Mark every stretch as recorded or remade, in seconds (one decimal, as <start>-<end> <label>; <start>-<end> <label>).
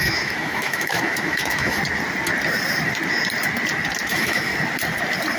0.0-1.8 remade; 1.8-4.1 recorded; 4.1-4.5 remade; 4.5-5.4 recorded